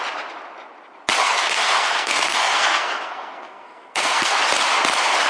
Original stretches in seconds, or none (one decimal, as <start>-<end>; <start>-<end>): 0.0-1.2; 4.4-5.3